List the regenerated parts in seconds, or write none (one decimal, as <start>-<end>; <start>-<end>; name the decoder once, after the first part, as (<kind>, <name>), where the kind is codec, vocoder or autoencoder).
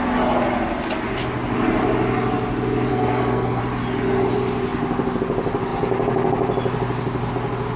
2.9-3.6 (codec, SNAC)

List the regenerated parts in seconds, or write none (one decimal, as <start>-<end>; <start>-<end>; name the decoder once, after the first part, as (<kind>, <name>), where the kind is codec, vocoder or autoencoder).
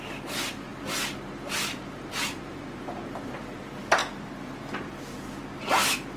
none